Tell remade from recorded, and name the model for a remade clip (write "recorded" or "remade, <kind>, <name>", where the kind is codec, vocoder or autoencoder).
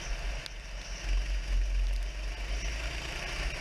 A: recorded